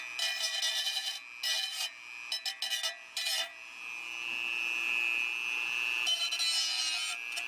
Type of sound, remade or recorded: recorded